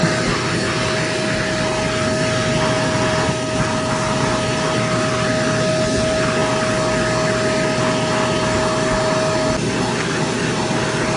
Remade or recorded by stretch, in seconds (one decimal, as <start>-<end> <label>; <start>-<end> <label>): 0.0-11.2 recorded

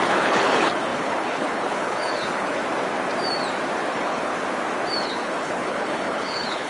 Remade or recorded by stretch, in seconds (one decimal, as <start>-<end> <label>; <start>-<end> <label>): 0.0-2.6 remade; 2.6-3.9 recorded; 3.9-4.3 remade; 4.3-5.0 recorded; 5.0-6.7 remade

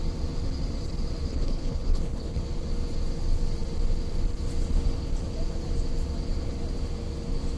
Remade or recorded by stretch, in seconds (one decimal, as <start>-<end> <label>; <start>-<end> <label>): 0.0-1.3 recorded; 1.3-2.4 remade; 2.4-7.6 recorded

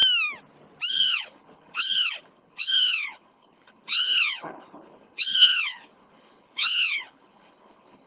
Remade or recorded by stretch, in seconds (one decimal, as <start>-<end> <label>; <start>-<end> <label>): 0.0-0.9 recorded; 0.9-8.1 remade

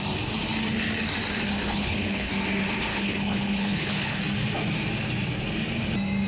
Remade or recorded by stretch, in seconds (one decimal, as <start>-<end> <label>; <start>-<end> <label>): 0.0-1.6 recorded; 1.6-2.3 remade; 2.3-2.9 recorded; 2.9-4.2 remade; 4.2-6.3 recorded

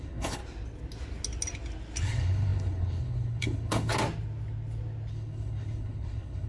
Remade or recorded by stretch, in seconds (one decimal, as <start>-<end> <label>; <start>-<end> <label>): 0.0-0.4 remade; 0.4-2.0 recorded; 2.0-3.9 remade; 3.9-5.1 recorded; 5.1-6.5 remade

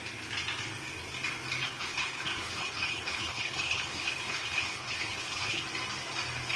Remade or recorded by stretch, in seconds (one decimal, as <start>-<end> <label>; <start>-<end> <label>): 0.0-1.6 recorded; 1.6-5.6 remade; 5.6-6.6 recorded

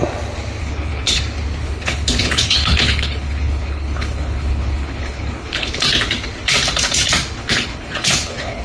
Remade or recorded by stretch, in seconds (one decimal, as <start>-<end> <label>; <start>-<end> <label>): 0.0-0.6 recorded; 0.6-1.2 remade; 1.2-1.6 recorded; 1.6-5.7 remade; 5.7-7.4 recorded; 7.4-8.6 remade